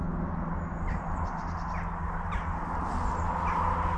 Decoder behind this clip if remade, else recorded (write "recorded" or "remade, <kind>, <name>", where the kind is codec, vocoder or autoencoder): recorded